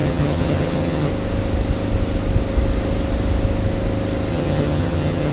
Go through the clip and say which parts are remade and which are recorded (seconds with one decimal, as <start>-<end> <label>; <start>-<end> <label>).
0.0-1.1 remade; 1.1-4.3 recorded; 4.3-5.3 remade